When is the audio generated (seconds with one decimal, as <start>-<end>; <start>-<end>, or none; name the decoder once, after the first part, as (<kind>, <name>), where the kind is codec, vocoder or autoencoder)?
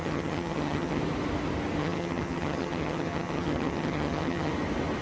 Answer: 0.0-1.0 (vocoder, HiFi-GAN); 1.8-4.5